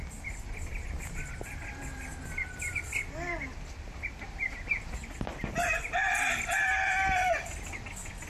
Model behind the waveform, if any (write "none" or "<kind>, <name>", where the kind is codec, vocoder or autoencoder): none